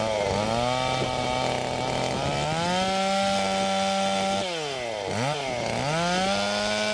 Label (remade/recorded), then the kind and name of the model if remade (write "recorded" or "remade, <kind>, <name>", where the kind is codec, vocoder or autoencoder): recorded